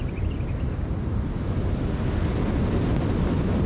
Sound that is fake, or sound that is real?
real